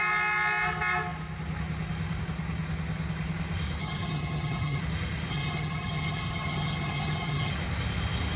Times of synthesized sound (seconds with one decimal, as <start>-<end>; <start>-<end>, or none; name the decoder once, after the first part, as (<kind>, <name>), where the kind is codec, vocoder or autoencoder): 3.8-4.8 (vocoder, HiFi-GAN); 5.3-7.5